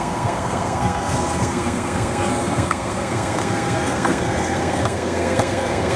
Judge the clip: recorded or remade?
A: remade